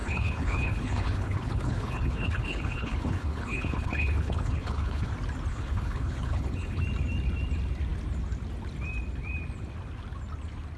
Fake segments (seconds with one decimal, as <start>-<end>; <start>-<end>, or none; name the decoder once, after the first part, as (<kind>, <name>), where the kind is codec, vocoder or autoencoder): 0.0-5.1 (codec, HILCodec); 5.5-6.8